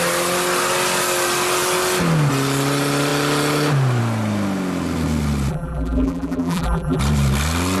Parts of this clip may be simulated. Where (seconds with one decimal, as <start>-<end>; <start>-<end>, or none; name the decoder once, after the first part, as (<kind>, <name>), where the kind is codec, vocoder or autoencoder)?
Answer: 5.5-7.0 (vocoder, BigVGAN v2)